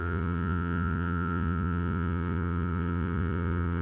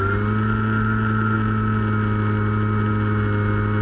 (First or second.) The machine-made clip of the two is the first